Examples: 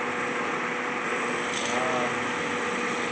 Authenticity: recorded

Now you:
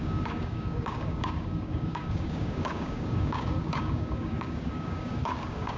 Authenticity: remade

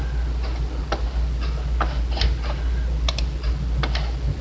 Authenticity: recorded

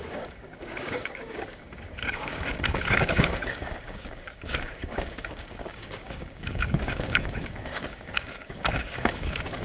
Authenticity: remade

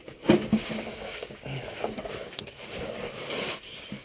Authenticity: remade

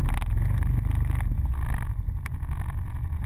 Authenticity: recorded